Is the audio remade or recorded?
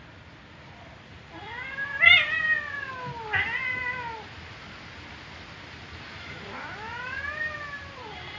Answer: recorded